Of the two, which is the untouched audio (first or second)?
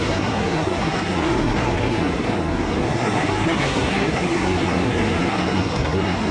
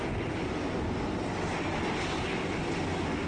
second